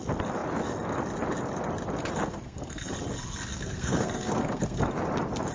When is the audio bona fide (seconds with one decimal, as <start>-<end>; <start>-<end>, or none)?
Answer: 0.0-2.3; 2.9-3.5; 4.8-5.5